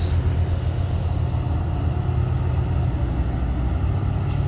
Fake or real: real